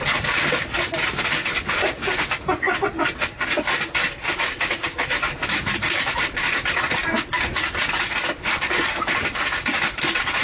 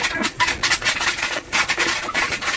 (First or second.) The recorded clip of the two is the first